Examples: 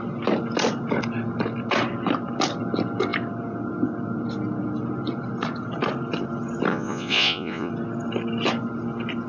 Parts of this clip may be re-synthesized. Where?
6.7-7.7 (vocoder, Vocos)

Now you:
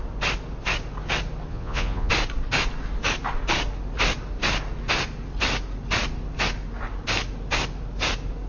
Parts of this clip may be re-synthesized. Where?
1.5-2.1 (vocoder, Vocos)

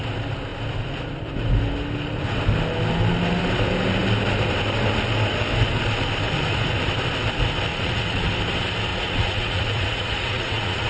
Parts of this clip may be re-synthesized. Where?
7.7-8.3 (vocoder, Vocos); 8.9-10.9

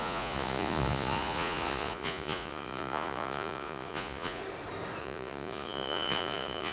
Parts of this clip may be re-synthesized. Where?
0.0-4.4 (vocoder, Vocos); 5.0-6.7

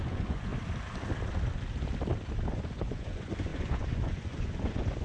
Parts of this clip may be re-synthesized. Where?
0.0-0.5 (vocoder, Vocos); 2.5-5.0

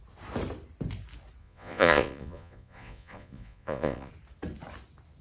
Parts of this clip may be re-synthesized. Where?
1.4-4.1 (vocoder, Vocos)

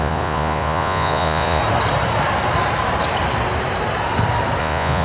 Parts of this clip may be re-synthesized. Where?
0.0-1.6 (vocoder, Vocos); 4.6-5.0

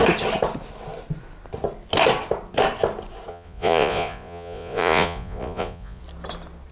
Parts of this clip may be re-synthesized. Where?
3.3-6.0 (vocoder, Vocos)